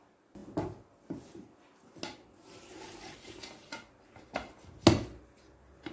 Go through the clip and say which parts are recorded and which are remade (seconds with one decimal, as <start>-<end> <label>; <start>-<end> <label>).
0.0-5.9 recorded

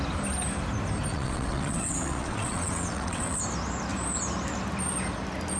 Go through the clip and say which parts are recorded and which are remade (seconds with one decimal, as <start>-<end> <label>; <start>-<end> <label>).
0.0-1.1 recorded; 1.1-3.4 remade; 3.4-5.6 recorded

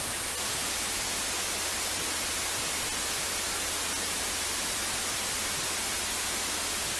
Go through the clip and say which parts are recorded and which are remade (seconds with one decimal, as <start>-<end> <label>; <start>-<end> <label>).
0.0-7.0 recorded

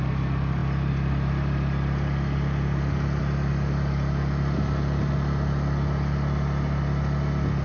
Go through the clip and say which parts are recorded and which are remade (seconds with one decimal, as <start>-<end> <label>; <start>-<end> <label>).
0.0-7.6 recorded